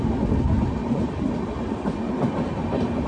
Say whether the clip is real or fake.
real